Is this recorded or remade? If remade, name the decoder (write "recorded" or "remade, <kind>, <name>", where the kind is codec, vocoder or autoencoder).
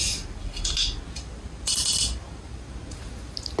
recorded